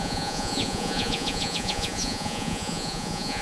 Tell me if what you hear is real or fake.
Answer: fake